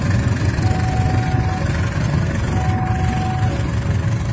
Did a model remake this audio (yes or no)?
no